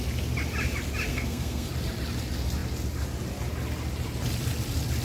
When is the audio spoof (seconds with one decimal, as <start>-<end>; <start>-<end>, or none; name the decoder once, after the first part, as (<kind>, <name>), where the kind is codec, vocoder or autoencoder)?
1.1-1.7 (codec, SNAC)